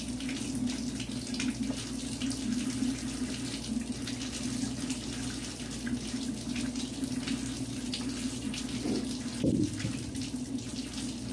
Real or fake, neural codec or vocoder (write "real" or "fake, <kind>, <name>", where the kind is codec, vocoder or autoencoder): real